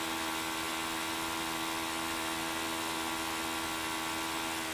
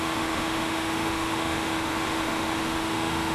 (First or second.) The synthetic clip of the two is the second